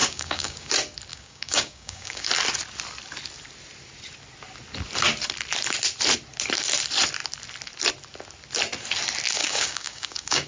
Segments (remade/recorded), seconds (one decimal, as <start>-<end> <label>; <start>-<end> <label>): 0.0-0.7 remade; 0.7-1.1 recorded; 1.1-2.3 remade; 2.3-9.4 recorded; 9.4-10.5 remade